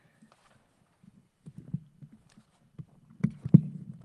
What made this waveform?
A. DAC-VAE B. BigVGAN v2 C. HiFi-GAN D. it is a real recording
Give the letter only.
D